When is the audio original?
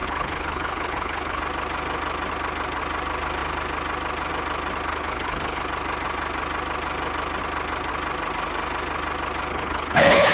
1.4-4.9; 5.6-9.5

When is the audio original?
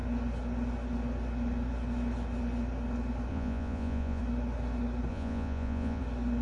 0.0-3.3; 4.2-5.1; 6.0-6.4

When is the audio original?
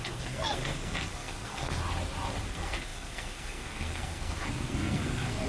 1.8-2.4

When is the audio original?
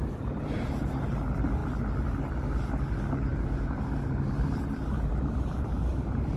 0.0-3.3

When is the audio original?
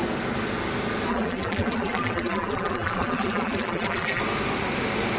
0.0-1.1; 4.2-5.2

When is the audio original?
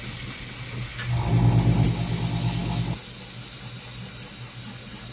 0.0-5.1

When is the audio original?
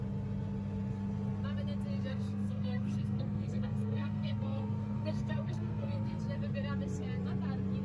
0.0-2.1; 6.2-7.8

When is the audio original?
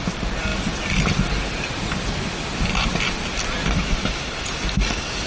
0.0-5.3